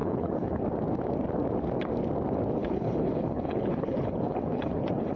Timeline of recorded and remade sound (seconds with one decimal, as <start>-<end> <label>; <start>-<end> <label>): 0.0-0.6 remade; 0.6-2.6 recorded; 2.6-5.2 remade